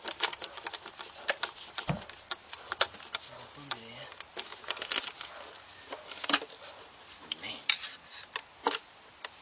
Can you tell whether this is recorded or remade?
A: recorded